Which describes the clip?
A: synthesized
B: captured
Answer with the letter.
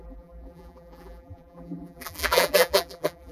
A